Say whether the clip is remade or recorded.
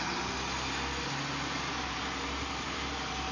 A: recorded